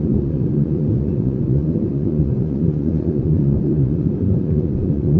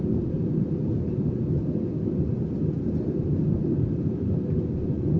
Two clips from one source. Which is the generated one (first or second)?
first